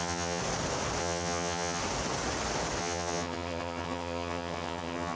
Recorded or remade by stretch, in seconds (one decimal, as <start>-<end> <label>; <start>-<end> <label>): 0.0-0.4 remade; 0.4-1.0 recorded; 1.0-1.8 remade; 1.8-2.8 recorded; 2.8-5.1 remade